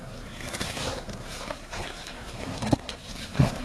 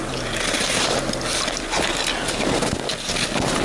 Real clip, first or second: second